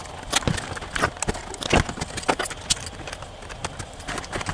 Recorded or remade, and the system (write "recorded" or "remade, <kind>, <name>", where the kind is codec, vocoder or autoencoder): recorded